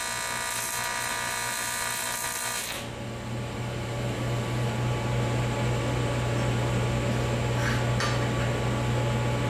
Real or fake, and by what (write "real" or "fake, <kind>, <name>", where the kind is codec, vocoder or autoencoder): real